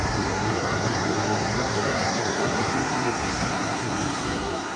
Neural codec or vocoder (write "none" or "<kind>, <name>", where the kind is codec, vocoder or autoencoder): codec, SNAC